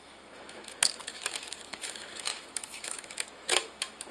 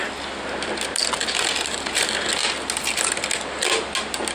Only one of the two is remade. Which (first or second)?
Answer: first